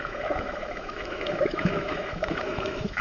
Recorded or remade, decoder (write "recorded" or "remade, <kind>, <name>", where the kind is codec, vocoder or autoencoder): remade, autoencoder, DAC-VAE